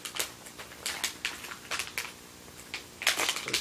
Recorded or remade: recorded